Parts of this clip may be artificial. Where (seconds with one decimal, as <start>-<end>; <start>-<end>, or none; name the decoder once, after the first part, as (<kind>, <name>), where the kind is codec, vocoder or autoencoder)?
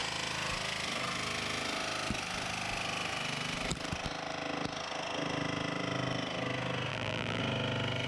6.9-7.4 (vocoder, BigVGAN v2)